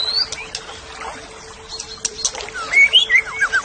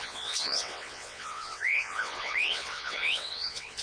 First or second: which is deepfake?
second